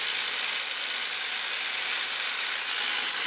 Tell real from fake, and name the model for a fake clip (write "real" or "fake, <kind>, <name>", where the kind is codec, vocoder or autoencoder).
real